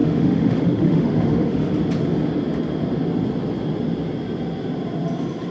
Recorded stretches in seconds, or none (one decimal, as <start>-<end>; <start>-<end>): 1.7-5.5